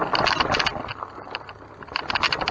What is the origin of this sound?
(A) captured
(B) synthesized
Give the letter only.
A